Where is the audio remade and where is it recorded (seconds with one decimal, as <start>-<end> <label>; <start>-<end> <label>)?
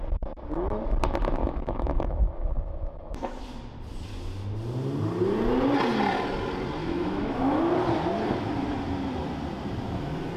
0.0-1.4 recorded; 1.4-3.4 remade; 3.4-6.8 recorded; 6.8-7.6 remade; 7.6-10.4 recorded